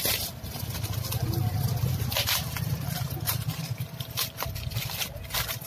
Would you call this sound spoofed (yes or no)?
yes